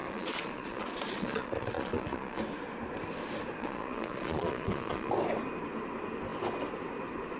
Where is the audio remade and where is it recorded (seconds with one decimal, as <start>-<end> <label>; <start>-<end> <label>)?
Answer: 0.0-2.4 remade; 2.4-3.6 recorded; 3.6-5.1 remade; 5.1-7.4 recorded